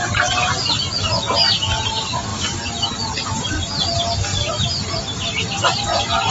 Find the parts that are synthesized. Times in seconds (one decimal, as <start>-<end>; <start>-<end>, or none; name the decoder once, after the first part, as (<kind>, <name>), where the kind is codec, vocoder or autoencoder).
none